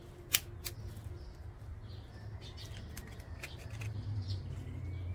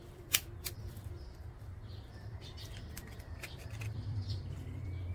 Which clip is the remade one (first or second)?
second